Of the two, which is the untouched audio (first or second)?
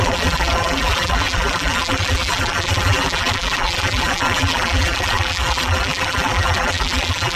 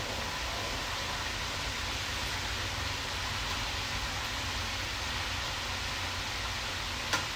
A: second